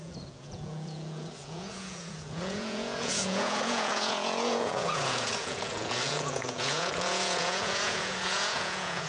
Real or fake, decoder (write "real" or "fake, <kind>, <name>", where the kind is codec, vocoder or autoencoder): fake, vocoder, Vocos